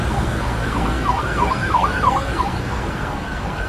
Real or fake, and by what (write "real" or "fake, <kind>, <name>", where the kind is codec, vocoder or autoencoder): fake, codec, SNAC